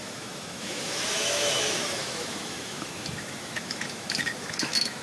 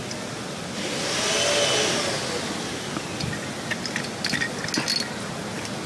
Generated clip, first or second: first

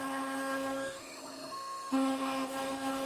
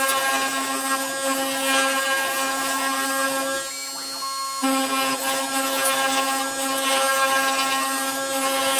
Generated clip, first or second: first